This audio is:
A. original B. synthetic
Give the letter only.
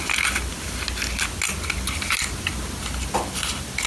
A